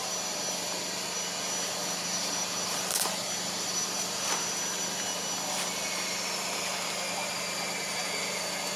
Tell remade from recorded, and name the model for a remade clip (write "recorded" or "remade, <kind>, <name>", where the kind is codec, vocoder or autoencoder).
recorded